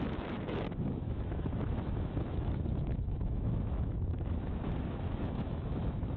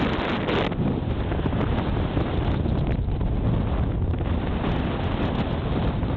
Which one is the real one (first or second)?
second